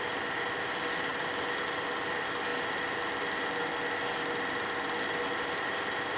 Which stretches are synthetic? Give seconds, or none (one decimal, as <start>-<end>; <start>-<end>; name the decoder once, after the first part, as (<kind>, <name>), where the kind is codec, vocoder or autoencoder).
none